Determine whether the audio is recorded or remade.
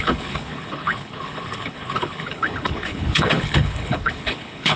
remade